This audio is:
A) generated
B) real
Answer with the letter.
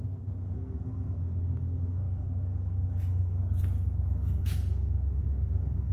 A